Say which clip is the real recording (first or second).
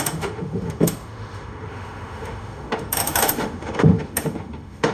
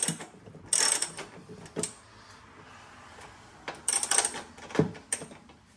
second